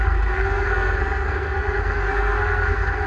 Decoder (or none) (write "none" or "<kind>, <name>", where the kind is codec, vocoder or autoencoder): codec, SNAC